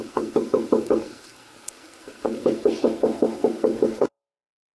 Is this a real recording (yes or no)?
no